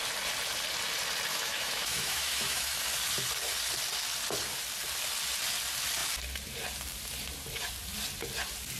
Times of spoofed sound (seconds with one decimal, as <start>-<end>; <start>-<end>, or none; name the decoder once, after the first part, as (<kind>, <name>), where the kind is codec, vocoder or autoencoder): 1.3-2.8 (autoencoder, DAC-VAE)